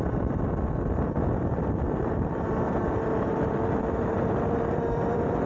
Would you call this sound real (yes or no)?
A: no